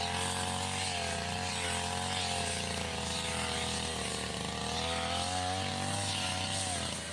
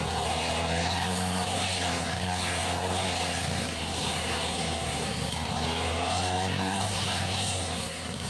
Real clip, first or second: first